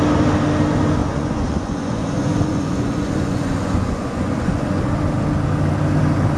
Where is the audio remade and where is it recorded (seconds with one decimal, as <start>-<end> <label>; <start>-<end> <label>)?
0.0-1.0 recorded; 1.0-4.8 remade; 4.8-6.4 recorded